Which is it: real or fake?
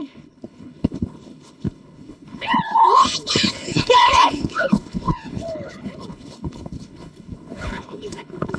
fake